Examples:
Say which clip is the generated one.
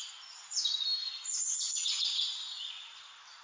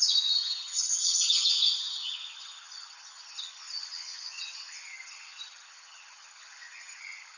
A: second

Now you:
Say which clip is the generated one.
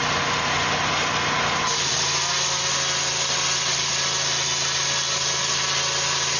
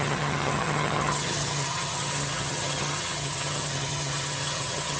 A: second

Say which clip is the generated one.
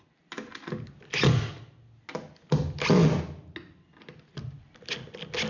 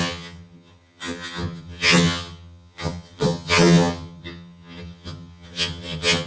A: second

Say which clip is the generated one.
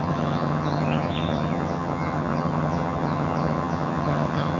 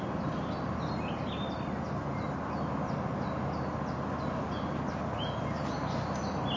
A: first